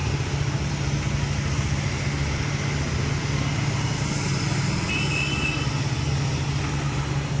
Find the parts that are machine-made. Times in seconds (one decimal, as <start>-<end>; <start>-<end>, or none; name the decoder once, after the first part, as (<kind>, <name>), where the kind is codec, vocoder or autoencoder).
none